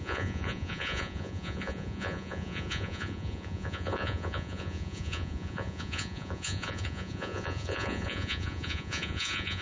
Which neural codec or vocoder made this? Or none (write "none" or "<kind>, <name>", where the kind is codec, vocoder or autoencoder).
vocoder, Vocos